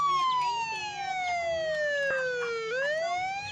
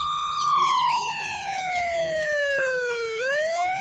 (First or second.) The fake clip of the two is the second